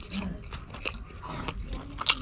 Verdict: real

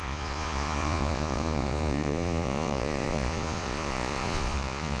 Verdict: fake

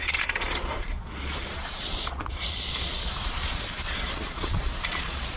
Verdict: fake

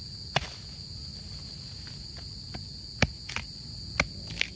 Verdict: real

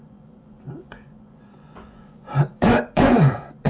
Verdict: fake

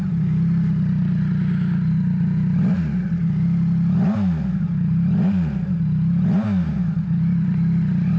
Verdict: real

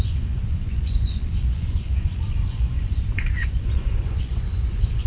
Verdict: fake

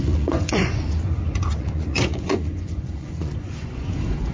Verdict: fake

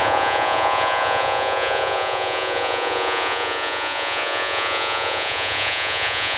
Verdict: fake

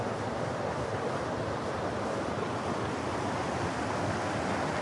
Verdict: real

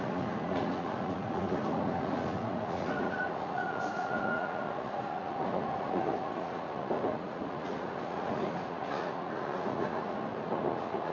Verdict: fake